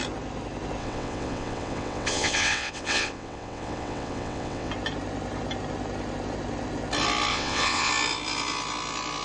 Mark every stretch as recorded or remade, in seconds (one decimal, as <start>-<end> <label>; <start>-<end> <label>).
0.0-0.8 recorded; 0.8-4.7 remade; 4.7-7.3 recorded; 7.3-7.9 remade; 7.9-9.2 recorded